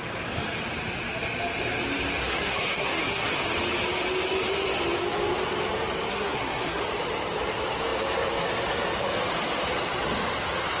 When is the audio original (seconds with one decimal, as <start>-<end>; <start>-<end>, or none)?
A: 0.0-2.2; 3.3-6.1; 6.8-10.8